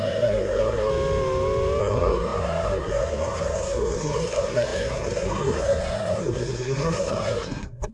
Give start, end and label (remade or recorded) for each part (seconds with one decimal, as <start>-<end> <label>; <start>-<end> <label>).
0.0-0.9 remade; 0.9-1.8 recorded; 1.8-7.9 remade